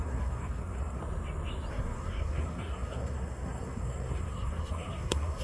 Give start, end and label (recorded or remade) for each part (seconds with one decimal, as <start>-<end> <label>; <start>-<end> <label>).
0.0-1.0 remade; 1.0-1.7 recorded; 1.7-5.4 remade